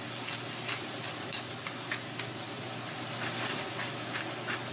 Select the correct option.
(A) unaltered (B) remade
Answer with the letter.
A